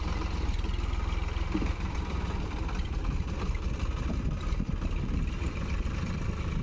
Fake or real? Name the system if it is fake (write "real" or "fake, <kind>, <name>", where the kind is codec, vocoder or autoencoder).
fake, vocoder, BigVGAN v2